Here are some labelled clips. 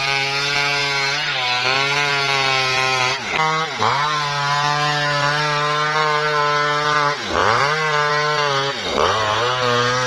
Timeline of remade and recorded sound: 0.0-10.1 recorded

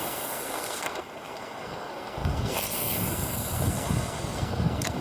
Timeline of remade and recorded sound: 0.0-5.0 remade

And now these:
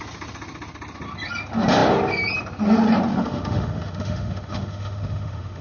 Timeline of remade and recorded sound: 0.0-3.1 recorded; 3.1-5.6 remade

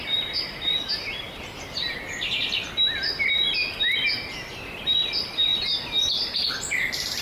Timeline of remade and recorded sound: 0.0-7.2 recorded